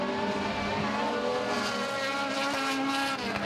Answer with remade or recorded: recorded